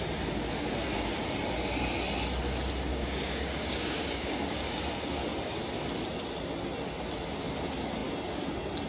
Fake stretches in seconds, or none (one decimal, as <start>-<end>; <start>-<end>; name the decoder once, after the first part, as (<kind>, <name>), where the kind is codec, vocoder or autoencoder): 2.9-4.8 (codec, DAC)